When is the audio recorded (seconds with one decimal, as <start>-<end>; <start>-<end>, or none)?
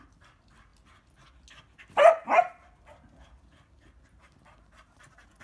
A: 0.0-5.4